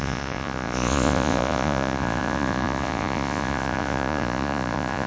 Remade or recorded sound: remade